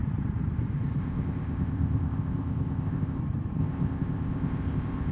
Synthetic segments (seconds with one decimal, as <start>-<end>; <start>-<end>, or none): 1.0-3.2; 3.6-5.1